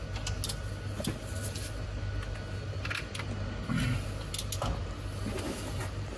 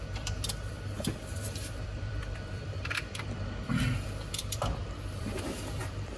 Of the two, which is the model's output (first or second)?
second